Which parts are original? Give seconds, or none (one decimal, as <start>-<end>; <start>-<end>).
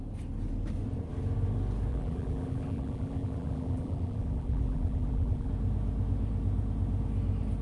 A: 0.0-1.9; 5.5-7.6